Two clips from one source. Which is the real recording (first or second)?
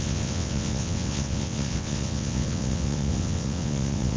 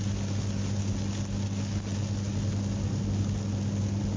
second